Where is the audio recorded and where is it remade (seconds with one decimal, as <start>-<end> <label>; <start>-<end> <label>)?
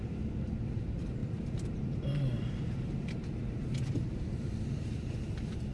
0.0-1.2 recorded; 1.2-4.5 remade; 4.5-5.7 recorded